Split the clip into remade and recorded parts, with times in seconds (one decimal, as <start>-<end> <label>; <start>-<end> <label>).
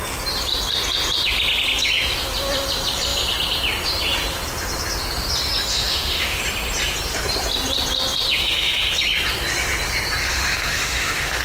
0.0-5.7 recorded; 5.7-6.4 remade; 6.4-8.4 recorded; 8.4-8.9 remade; 8.9-10.2 recorded; 10.2-11.4 remade